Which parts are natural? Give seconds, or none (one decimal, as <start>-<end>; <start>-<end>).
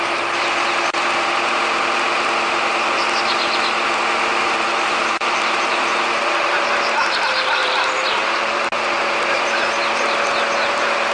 0.0-4.4; 6.7-7.6; 9.3-11.1